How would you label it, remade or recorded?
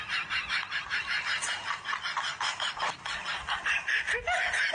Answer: recorded